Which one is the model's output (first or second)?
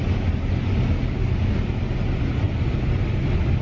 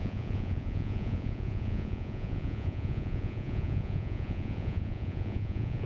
second